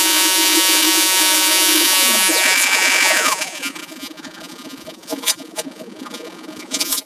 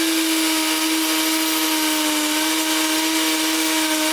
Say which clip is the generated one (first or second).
first